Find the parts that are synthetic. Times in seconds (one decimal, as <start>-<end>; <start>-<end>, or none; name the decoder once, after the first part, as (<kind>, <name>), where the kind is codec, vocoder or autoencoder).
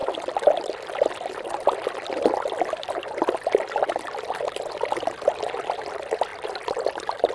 6.3-7.3 (vocoder, BigVGAN v2)